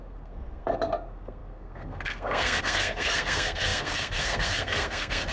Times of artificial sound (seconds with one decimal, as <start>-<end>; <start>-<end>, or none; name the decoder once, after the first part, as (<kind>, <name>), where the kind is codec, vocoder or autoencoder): 0.0-5.3 (codec, SNAC)